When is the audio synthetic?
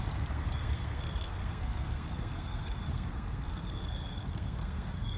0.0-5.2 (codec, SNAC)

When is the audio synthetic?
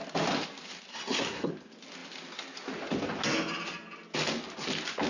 0.9-1.5 (codec, SNAC)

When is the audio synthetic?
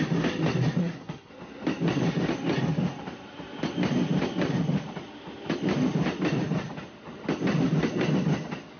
0.8-1.3 (codec, SNAC)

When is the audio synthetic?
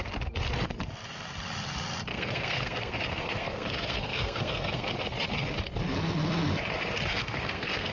2.1-4.9 (codec, SNAC); 7.1-7.9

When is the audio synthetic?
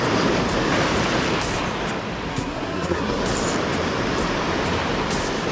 2.3-3.2 (codec, SNAC)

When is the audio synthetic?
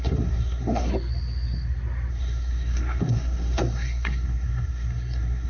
0.0-0.9 (codec, SNAC); 2.1-5.5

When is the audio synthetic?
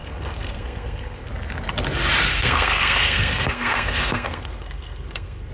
0.0-1.3 (codec, SNAC); 2.3-5.5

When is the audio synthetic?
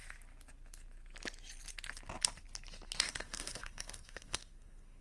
3.0-5.0 (codec, SNAC)